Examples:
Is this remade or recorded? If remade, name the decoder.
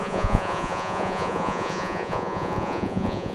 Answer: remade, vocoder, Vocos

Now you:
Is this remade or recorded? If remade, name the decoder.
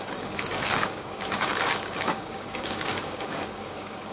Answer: remade, codec, DAC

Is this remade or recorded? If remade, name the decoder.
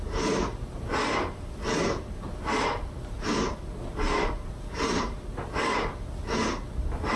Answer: recorded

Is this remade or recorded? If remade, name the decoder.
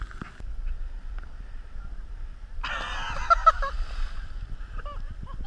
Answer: recorded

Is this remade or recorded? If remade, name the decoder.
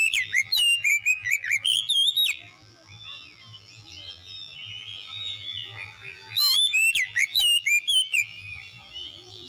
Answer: remade, vocoder, BigVGAN v2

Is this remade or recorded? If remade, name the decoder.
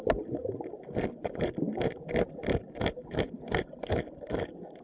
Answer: recorded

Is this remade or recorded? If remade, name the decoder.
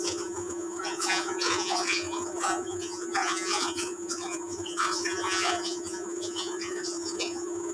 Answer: remade, vocoder, Vocos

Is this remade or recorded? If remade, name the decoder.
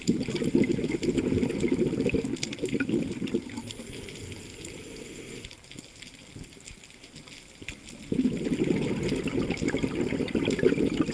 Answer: recorded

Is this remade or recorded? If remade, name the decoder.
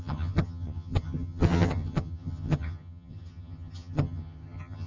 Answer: remade, vocoder, HiFi-GAN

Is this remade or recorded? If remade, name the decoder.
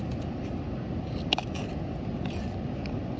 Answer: recorded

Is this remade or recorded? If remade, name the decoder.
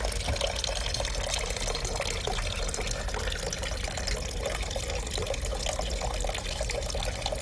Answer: recorded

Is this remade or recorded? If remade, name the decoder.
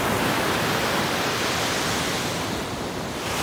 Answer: recorded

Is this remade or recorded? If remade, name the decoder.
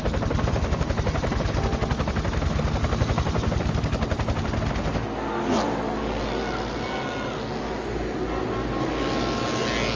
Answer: recorded